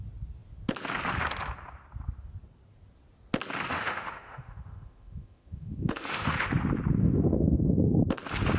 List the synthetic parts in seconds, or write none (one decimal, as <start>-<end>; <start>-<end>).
3.7-6.5; 7.0-8.0